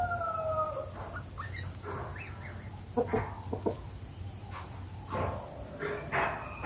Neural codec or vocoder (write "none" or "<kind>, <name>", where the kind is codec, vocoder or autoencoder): none